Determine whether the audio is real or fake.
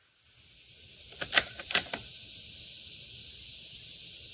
real